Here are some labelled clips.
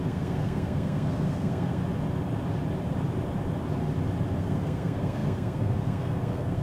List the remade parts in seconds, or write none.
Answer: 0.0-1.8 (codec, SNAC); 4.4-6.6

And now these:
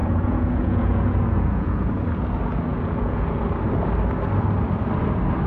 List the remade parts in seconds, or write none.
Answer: 0.0-1.9 (vocoder, Vocos); 2.7-3.4

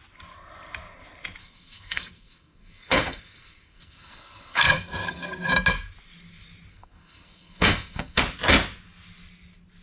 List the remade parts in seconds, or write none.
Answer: 1.4-5.5 (codec, SNAC); 6.7-8.2

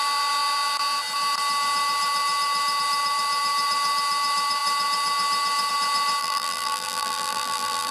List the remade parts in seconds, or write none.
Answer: 6.2-7.9 (vocoder, BigVGAN v2)

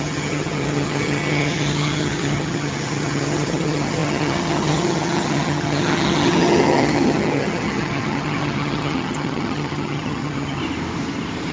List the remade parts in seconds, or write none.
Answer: 0.0-10.6 (vocoder, HiFi-GAN)

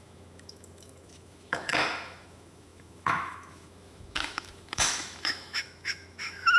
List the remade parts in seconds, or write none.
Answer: 0.0-6.6 (autoencoder, DAC-VAE)

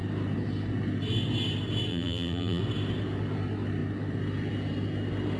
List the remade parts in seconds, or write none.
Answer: 1.9-2.6 (vocoder, BigVGAN v2)